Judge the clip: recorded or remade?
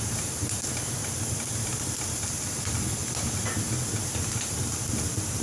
recorded